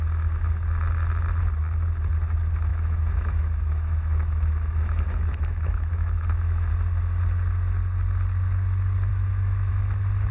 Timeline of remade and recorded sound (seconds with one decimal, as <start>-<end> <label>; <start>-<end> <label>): 0.0-2.7 recorded; 2.7-6.7 remade; 6.7-9.1 recorded; 9.1-9.7 remade; 9.7-10.3 recorded